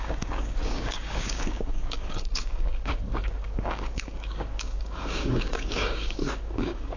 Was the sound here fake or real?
fake